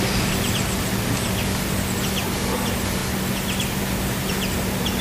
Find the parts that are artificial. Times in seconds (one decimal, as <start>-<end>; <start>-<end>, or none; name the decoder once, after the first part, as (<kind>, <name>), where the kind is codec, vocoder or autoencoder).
none